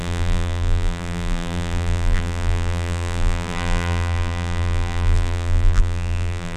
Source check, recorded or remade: remade